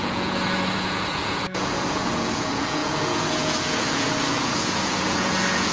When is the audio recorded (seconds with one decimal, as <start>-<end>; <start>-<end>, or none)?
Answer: none